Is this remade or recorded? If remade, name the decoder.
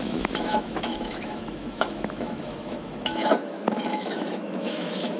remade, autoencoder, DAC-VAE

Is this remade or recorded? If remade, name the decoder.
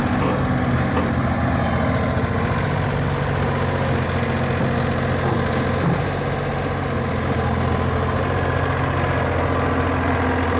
recorded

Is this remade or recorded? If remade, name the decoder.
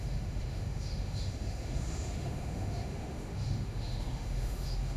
remade, autoencoder, DAC-VAE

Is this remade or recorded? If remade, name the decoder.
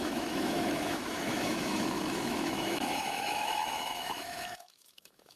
remade, autoencoder, DAC-VAE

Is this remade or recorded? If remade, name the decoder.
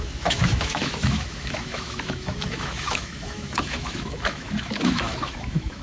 remade, autoencoder, DAC-VAE